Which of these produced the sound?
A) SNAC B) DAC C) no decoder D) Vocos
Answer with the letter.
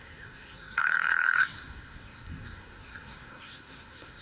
A